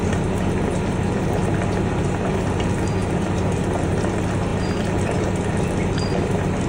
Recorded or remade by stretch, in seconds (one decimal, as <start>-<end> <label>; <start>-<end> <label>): 0.0-6.7 recorded